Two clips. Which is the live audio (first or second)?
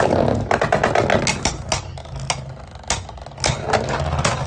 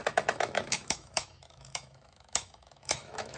first